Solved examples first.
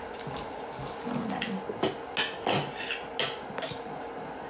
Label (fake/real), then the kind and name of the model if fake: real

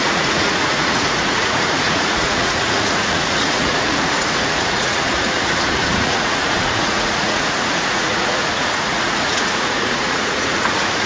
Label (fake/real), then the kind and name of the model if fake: fake, vocoder, Vocos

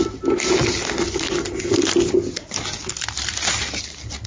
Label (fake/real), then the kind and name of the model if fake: real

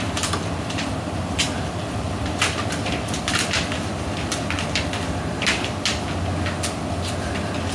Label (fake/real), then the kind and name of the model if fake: real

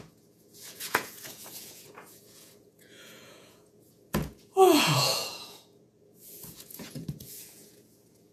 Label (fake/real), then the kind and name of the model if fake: fake, vocoder, Vocos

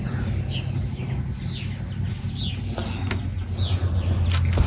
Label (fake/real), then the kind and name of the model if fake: real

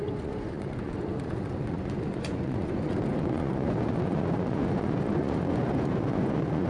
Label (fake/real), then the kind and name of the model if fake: fake, vocoder, Vocos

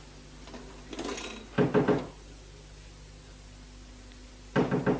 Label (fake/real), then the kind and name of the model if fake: real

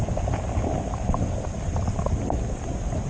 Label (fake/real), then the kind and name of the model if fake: real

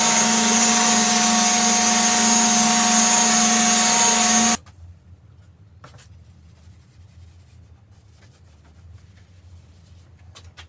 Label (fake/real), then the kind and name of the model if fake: real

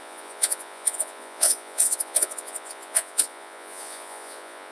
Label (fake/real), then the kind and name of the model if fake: fake, vocoder, Vocos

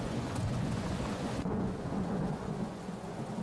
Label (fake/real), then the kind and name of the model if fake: fake, vocoder, Vocos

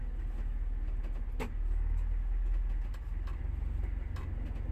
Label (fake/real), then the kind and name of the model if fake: real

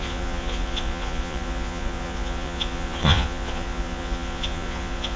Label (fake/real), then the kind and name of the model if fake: fake, vocoder, Vocos